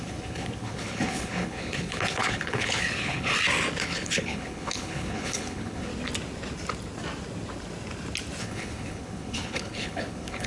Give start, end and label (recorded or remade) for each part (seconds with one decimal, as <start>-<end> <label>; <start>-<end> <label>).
0.0-3.3 remade; 3.3-3.8 recorded; 3.8-5.9 remade; 5.9-8.4 recorded; 8.4-10.5 remade